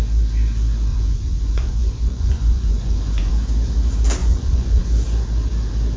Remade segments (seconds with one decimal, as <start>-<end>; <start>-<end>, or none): 0.9-3.3; 4.2-4.8